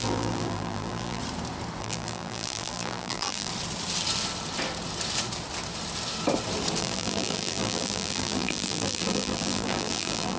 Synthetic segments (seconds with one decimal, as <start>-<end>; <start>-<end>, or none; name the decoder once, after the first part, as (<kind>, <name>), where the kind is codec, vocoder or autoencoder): 0.0-1.2 (vocoder, BigVGAN v2); 1.8-3.5; 6.8-10.4